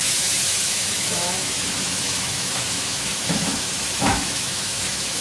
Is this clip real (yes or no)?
no